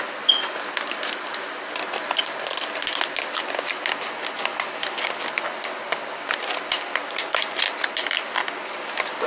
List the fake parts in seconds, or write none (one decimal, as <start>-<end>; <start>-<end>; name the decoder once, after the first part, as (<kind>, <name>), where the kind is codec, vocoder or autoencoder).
7.0-7.7 (vocoder, BigVGAN v2)